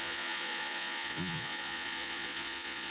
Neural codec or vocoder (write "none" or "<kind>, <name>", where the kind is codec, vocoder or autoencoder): vocoder, Vocos